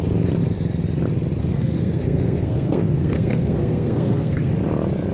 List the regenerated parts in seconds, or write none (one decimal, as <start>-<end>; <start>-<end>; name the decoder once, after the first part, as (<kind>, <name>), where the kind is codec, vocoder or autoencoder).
1.4-4.5 (codec, SNAC)